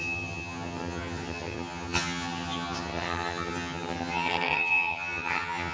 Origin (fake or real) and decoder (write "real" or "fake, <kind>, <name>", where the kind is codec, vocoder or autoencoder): fake, vocoder, HiFi-GAN